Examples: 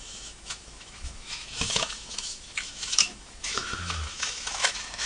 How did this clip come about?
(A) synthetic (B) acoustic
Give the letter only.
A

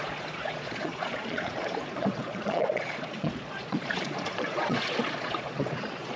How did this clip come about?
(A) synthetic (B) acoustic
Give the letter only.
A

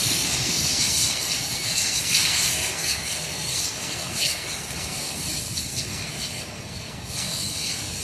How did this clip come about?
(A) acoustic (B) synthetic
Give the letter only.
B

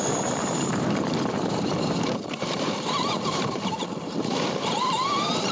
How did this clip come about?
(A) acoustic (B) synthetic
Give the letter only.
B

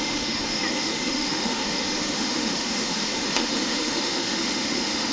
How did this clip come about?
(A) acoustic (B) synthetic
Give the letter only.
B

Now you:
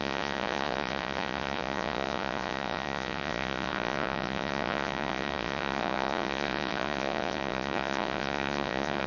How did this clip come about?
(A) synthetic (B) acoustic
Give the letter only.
A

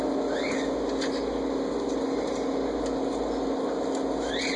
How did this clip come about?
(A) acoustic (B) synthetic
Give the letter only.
A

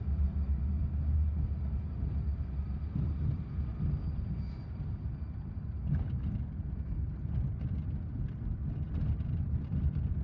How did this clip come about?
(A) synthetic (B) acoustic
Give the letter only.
B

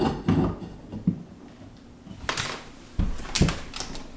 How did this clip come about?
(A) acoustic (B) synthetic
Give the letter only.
A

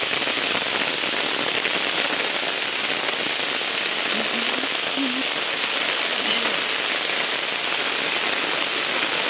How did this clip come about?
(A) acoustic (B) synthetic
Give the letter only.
A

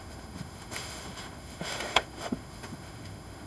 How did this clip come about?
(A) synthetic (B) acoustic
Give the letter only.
A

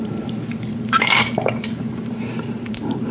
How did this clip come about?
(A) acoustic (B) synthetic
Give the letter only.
B